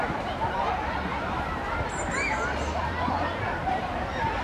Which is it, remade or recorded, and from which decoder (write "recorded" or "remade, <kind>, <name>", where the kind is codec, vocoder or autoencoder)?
recorded